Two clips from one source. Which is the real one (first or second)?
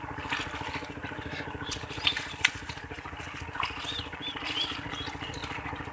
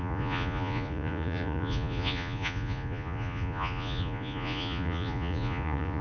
first